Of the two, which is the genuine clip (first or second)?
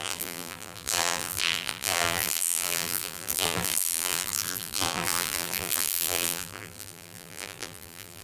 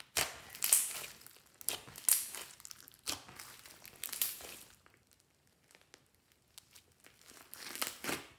second